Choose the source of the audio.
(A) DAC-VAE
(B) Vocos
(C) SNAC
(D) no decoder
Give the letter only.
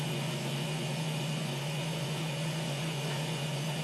B